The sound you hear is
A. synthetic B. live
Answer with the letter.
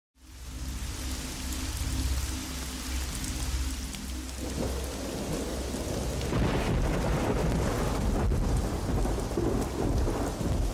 B